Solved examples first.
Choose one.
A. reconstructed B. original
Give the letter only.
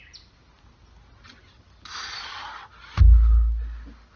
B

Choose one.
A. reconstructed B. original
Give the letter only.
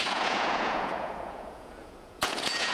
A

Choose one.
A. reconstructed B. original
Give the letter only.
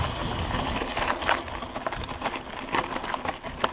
B